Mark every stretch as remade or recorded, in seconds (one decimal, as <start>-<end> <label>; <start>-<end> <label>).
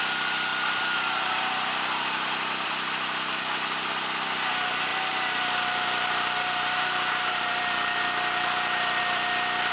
0.0-0.5 recorded; 0.5-3.4 remade; 3.4-4.9 recorded; 4.9-9.0 remade; 9.0-9.7 recorded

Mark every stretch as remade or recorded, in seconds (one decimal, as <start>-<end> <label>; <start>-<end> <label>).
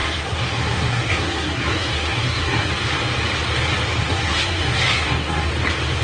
0.0-2.7 remade; 2.7-4.0 recorded; 4.0-5.5 remade; 5.5-6.0 recorded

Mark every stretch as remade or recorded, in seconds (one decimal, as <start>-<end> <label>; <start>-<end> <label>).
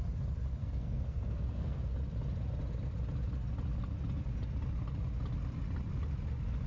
0.0-0.6 recorded; 0.6-1.9 remade; 1.9-6.7 recorded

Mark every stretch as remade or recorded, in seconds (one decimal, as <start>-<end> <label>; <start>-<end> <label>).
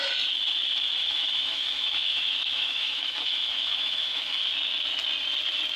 0.0-1.0 recorded; 1.0-4.5 remade; 4.5-5.8 recorded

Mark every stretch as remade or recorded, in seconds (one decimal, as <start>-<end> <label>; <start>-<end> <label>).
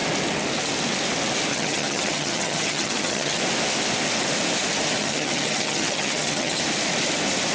0.0-1.5 recorded; 1.5-3.4 remade; 3.4-5.0 recorded; 5.0-6.6 remade; 6.6-7.5 recorded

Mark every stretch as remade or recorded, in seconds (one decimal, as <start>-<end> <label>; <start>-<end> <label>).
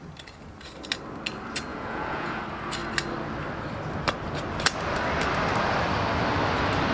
0.0-1.7 recorded; 1.7-2.4 remade; 2.4-6.9 recorded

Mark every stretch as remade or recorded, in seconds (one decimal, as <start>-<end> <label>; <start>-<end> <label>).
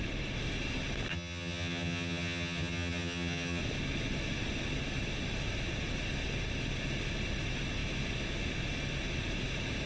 0.0-1.1 recorded; 1.1-3.6 remade; 3.6-9.9 recorded